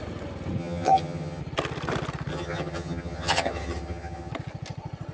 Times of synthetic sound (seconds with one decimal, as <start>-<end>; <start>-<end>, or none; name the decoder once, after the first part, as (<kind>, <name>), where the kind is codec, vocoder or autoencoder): 0.6-1.4 (vocoder, HiFi-GAN); 2.3-4.3